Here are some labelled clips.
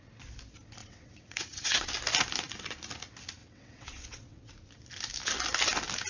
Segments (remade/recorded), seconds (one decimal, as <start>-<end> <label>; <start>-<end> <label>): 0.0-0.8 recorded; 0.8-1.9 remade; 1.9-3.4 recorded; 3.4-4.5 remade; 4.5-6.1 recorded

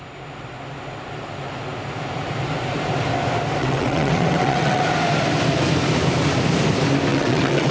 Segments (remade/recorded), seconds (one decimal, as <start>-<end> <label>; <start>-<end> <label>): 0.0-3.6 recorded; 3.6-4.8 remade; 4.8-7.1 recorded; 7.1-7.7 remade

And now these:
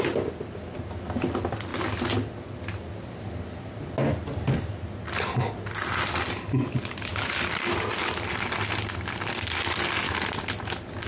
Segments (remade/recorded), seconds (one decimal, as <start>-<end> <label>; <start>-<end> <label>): 0.0-11.1 recorded